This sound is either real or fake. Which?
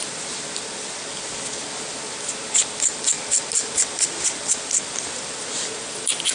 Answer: real